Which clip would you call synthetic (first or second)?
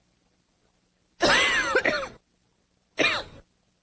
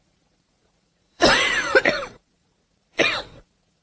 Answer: second